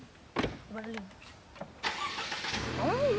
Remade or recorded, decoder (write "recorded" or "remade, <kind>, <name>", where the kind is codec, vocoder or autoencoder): recorded